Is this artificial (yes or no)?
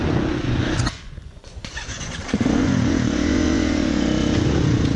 yes